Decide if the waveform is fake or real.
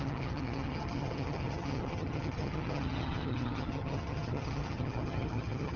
fake